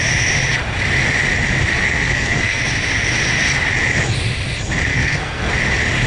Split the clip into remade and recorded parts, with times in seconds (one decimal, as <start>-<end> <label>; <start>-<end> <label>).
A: 0.0-1.7 recorded; 1.7-2.6 remade; 2.6-4.9 recorded; 4.9-5.5 remade; 5.5-6.1 recorded